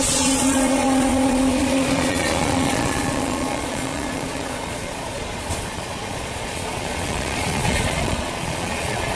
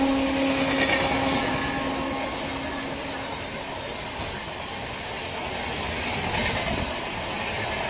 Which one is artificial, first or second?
first